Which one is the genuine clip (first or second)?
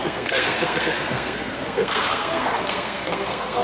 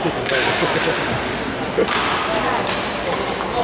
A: second